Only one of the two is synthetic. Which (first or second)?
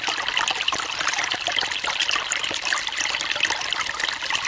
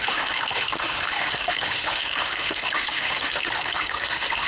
second